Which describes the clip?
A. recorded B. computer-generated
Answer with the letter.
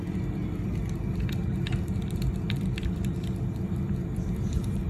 B